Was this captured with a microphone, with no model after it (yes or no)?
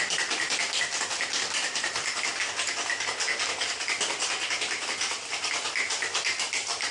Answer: yes